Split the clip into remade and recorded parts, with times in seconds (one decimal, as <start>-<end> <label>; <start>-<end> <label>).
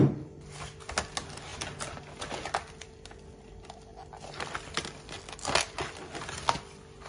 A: 0.0-7.1 recorded